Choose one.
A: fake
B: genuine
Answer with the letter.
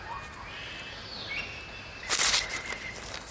B